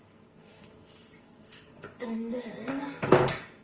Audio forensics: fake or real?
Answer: fake